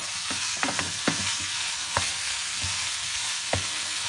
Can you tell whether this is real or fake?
fake